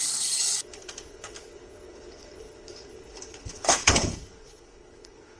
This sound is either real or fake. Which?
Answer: fake